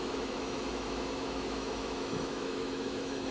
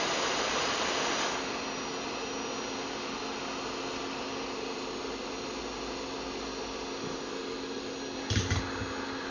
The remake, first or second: first